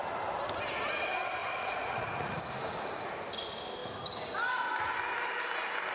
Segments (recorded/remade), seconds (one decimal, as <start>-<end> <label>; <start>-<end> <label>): 0.0-1.4 recorded; 1.4-2.4 remade; 2.4-5.9 recorded